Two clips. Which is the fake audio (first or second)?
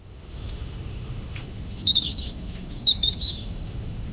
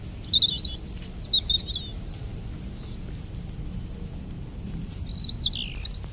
first